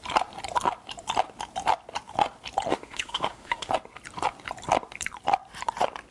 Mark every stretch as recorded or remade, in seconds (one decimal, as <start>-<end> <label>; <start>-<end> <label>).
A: 0.0-2.7 recorded; 2.7-3.7 remade; 3.7-6.1 recorded